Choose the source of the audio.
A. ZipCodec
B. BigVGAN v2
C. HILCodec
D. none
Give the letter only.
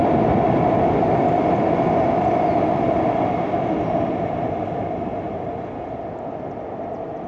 D